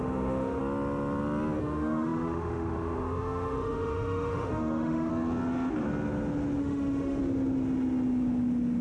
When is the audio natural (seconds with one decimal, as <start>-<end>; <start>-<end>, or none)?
0.6-1.6; 5.1-6.6; 7.2-8.8